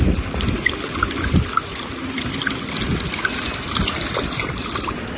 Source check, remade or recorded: recorded